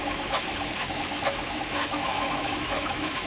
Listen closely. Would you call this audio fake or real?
fake